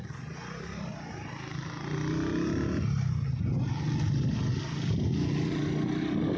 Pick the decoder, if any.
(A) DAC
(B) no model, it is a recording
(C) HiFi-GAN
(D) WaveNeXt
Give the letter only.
B